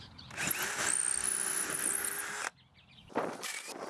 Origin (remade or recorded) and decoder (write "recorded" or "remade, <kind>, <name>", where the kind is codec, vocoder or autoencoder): recorded